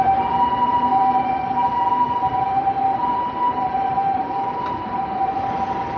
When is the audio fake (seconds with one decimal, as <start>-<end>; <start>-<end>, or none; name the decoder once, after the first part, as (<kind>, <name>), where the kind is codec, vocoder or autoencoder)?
none